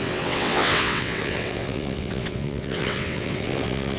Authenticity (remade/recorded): remade